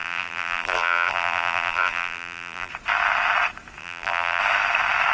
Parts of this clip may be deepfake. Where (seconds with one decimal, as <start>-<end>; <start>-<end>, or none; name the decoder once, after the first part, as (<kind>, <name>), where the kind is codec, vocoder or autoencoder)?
0.0-2.7 (vocoder, BigVGAN v2); 3.8-4.4